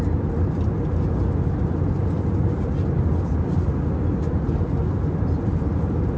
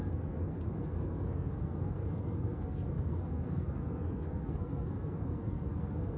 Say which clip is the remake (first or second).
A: second